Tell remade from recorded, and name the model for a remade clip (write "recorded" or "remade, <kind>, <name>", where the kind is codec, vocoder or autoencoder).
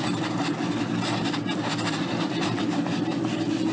recorded